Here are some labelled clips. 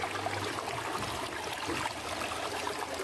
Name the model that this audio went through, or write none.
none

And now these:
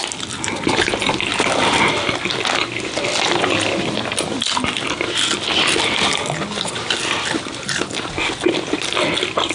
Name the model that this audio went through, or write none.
none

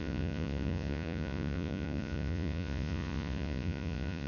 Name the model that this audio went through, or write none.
vocoder, Vocos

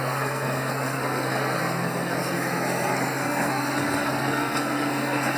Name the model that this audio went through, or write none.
codec, SNAC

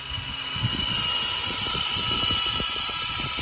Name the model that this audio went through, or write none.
none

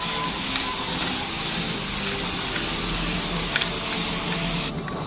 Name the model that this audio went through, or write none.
none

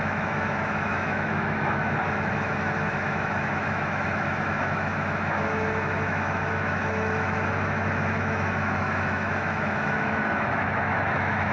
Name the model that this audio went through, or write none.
autoencoder, DAC-VAE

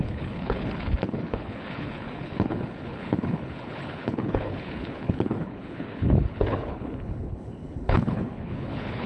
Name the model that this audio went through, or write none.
codec, HILCodec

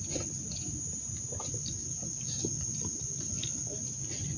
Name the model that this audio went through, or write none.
none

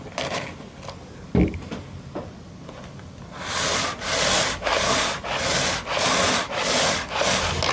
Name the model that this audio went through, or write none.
none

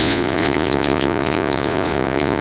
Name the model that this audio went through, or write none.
vocoder, Vocos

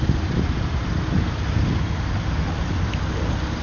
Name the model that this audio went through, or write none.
none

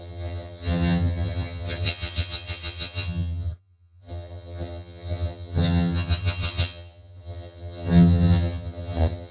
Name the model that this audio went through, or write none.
vocoder, HiFi-GAN